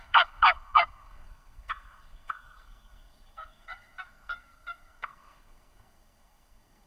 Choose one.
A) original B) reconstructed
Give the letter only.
B